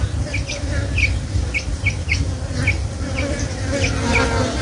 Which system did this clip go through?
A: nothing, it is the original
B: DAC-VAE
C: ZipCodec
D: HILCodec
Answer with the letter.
A